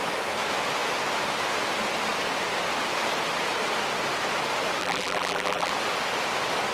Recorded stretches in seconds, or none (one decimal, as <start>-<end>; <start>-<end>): 0.0-4.8; 5.7-6.7